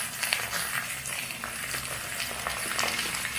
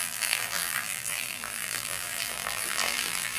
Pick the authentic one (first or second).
first